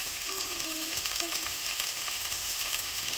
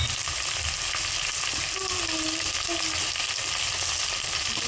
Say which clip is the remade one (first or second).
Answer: first